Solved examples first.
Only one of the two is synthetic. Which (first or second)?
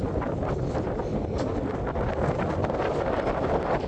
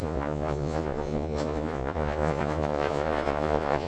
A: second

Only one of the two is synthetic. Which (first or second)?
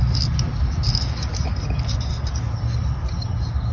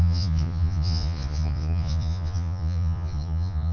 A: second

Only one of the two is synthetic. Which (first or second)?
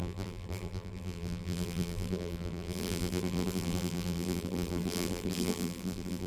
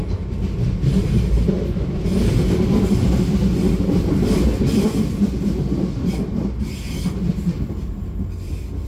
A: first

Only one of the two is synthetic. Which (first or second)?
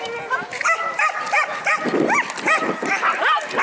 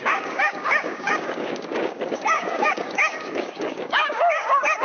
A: second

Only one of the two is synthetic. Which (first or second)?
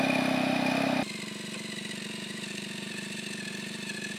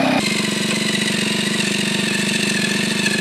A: first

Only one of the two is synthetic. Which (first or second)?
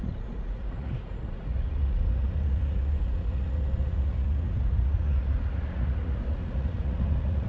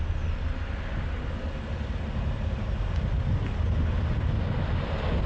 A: first